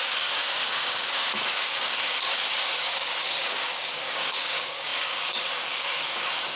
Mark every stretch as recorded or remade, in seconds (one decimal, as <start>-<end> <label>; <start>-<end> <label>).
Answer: 0.0-6.6 remade